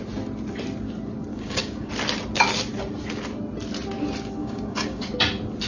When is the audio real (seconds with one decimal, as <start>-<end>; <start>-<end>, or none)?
0.0-1.3; 1.9-4.4; 5.0-5.7